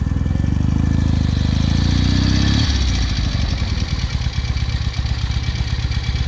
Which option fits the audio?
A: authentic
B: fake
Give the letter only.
A